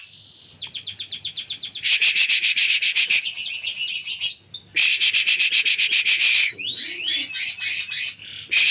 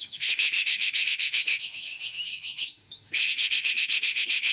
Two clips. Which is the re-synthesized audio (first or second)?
second